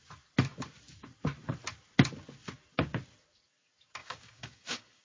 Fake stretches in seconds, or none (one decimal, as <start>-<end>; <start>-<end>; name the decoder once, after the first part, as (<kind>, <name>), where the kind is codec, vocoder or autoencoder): 4.0-5.0 (codec, DAC)